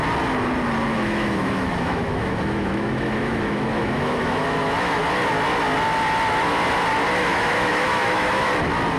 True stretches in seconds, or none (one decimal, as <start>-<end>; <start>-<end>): 0.0-0.9; 5.0-7.3; 8.5-9.0